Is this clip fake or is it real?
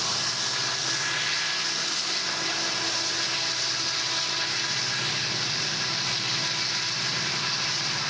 real